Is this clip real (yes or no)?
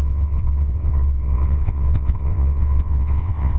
no